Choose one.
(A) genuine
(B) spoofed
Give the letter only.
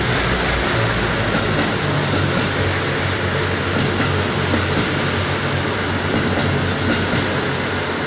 A